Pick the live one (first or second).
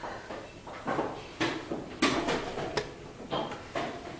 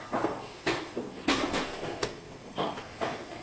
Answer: first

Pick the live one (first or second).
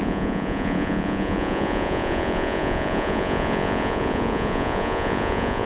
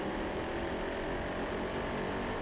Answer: second